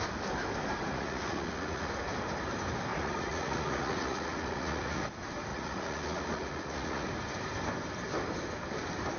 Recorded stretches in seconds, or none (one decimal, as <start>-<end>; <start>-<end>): 0.0-0.9; 1.9-2.9; 5.0-5.5; 7.1-9.2